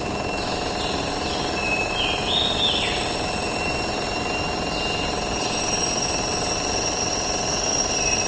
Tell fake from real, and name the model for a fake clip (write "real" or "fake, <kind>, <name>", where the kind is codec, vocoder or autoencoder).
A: real